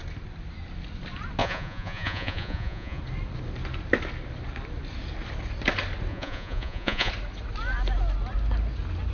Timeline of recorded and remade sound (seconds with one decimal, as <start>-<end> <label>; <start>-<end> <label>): 0.0-1.4 recorded; 1.4-3.0 remade; 3.0-6.1 recorded; 6.1-7.1 remade; 7.1-9.1 recorded